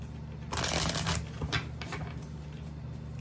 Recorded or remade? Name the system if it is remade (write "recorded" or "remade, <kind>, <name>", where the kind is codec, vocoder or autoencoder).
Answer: recorded